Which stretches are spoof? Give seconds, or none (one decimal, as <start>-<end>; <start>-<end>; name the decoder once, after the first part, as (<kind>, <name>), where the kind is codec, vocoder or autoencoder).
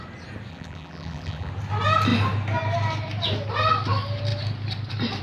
0.5-1.5 (vocoder, BigVGAN v2)